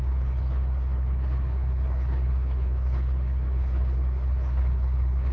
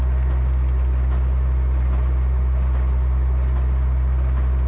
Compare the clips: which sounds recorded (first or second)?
second